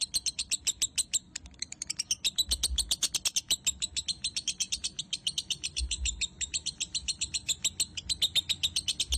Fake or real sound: real